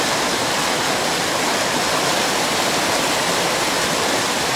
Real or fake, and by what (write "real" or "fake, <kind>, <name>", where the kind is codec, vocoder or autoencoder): real